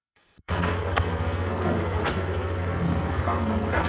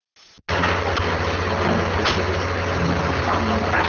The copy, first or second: first